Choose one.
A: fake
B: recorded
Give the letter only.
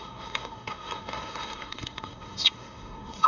A